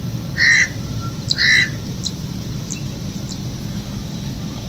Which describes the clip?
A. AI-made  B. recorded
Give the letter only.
B